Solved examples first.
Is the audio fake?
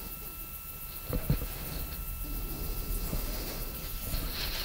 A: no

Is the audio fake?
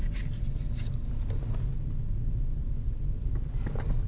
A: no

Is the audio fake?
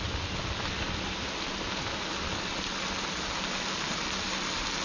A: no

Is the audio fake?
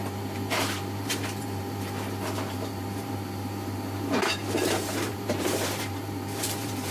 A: yes